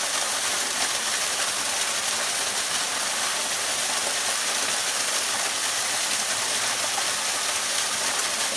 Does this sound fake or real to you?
real